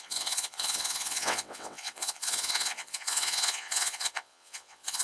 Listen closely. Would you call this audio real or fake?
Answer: fake